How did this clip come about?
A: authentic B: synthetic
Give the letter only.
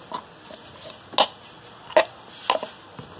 A